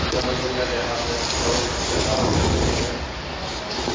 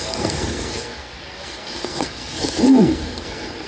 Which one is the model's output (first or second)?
second